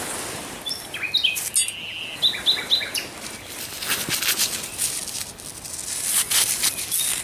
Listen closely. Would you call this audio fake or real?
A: real